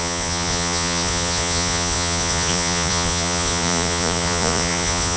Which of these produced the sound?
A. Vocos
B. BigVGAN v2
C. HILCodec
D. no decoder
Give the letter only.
A